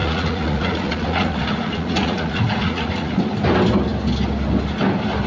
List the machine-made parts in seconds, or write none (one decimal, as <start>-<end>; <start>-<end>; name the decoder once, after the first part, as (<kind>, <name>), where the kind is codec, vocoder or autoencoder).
0.0-3.2 (vocoder, Vocos)